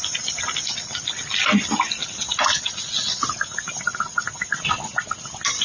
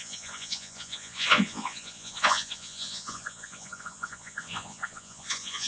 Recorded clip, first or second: first